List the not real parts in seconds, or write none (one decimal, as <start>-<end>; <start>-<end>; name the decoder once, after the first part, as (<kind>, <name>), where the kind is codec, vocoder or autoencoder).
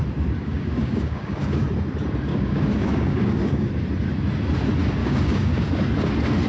0.4-1.6 (codec, DAC); 2.3-3.7; 5.0-5.7